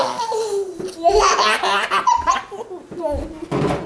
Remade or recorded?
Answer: recorded